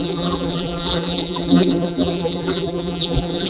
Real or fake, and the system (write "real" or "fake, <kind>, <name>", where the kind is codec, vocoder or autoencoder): fake, vocoder, BigVGAN v2